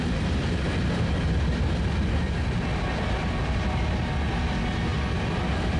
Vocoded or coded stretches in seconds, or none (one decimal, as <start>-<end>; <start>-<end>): none

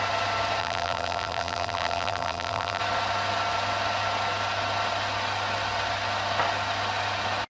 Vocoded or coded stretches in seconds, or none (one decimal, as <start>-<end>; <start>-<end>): 0.6-2.8

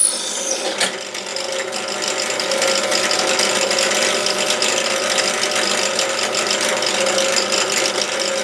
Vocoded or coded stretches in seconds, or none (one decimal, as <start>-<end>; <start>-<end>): none

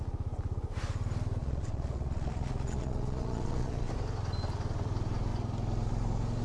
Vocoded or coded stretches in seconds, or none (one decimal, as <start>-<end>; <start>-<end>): 1.4-3.9

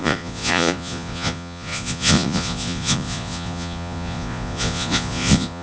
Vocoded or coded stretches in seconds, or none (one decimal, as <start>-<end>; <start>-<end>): 0.0-5.6

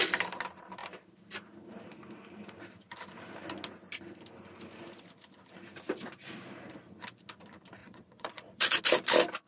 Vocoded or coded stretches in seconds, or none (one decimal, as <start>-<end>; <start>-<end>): 7.8-8.8

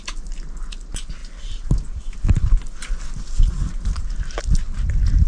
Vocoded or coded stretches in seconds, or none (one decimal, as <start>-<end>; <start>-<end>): none